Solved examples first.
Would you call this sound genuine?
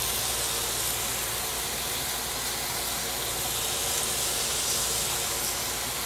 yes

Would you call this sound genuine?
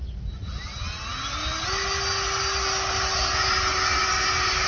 yes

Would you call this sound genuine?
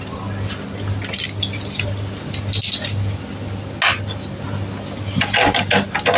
yes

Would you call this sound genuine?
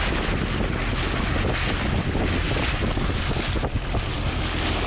yes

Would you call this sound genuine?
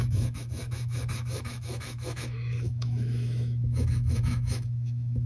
no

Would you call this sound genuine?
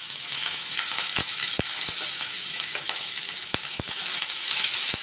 no